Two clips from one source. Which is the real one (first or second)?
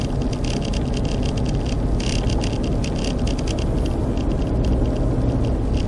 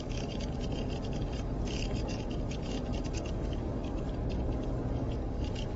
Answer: first